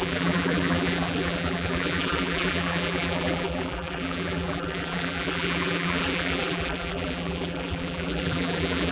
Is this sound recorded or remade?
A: remade